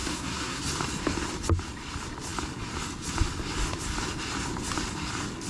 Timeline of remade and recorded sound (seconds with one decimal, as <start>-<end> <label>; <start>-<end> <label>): 0.0-0.6 remade; 0.6-5.5 recorded